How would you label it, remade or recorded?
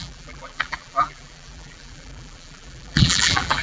remade